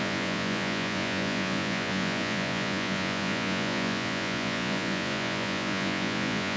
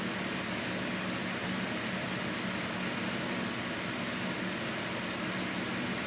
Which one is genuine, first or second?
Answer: second